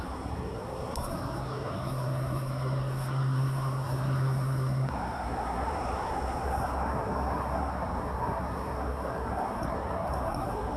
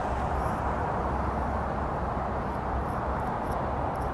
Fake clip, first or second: first